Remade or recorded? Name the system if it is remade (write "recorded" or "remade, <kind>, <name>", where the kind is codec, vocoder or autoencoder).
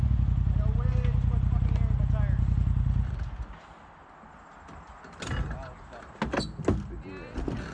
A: recorded